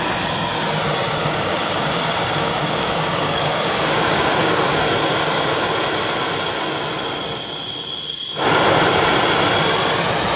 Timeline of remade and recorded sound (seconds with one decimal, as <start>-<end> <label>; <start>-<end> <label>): 0.0-1.2 recorded; 1.2-4.7 remade; 4.7-10.4 recorded